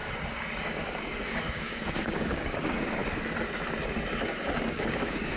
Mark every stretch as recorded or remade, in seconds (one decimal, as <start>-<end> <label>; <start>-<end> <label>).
0.0-0.6 recorded; 0.6-3.0 remade; 3.0-4.7 recorded; 4.7-5.4 remade